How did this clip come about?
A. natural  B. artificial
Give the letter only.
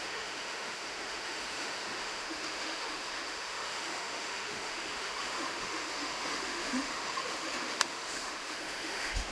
B